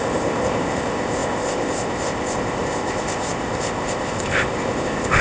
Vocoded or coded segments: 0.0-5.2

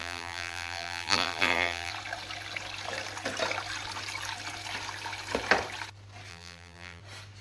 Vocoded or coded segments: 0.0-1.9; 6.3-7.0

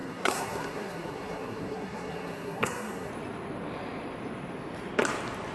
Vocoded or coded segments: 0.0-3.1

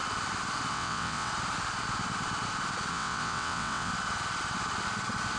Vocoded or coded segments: 0.7-1.3; 2.9-3.9

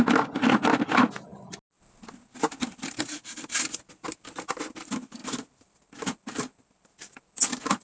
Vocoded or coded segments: none